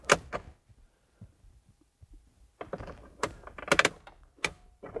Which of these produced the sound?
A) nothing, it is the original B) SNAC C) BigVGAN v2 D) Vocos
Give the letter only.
A